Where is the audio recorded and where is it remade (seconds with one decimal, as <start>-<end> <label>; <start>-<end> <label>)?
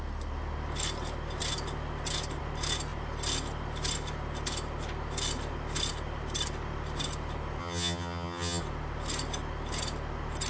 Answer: 0.0-7.6 recorded; 7.6-8.6 remade; 8.6-10.5 recorded